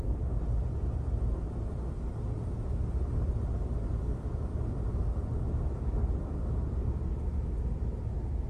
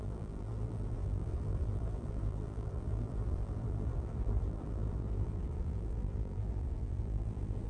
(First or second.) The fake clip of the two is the second